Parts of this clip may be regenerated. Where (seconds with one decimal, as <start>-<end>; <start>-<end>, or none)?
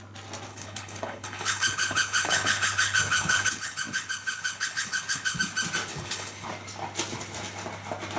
0.5-5.4; 5.9-6.5